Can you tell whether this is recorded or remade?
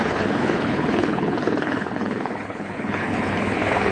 remade